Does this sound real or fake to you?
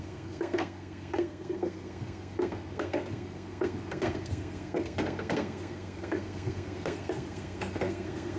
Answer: fake